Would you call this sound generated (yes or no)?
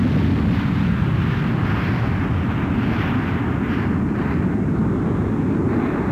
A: no